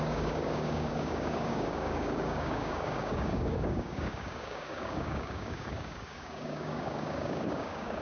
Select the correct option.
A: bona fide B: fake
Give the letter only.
B